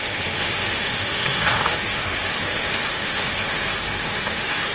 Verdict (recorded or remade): remade